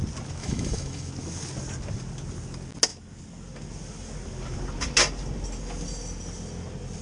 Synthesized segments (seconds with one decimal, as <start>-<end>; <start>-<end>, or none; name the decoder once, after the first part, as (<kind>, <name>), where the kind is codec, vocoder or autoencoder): 0.4-1.1 (autoencoder, DAC-VAE)